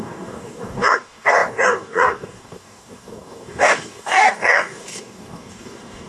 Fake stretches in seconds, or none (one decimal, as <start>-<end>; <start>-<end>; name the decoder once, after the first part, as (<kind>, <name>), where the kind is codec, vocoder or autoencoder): 0.0-6.1 (codec, DAC)